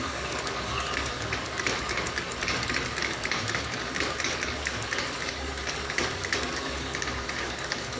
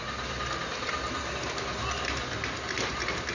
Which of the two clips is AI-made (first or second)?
first